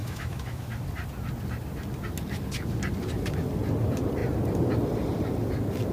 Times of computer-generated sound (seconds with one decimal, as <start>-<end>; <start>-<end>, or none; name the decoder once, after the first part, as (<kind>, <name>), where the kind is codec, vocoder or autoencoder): 0.0-0.7 (autoencoder, DAC-VAE)

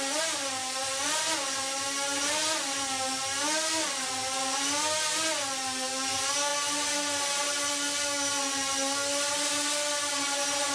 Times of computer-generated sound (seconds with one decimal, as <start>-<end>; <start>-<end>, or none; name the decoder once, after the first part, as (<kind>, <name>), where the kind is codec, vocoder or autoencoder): none

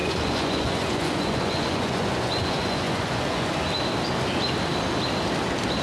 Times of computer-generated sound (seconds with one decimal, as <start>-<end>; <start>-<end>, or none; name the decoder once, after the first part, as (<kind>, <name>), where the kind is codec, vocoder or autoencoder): 0.0-3.5 (vocoder, Vocos)

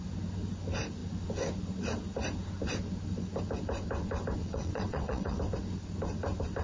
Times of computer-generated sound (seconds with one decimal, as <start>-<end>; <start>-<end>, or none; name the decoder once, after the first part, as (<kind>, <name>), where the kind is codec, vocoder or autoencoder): 4.4-5.4 (vocoder, WaveNeXt)